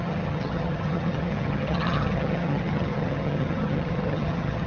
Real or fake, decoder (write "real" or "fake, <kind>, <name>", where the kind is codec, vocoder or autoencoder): fake, vocoder, HiFi-GAN